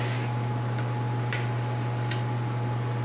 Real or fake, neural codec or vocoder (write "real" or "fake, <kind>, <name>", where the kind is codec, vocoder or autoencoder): real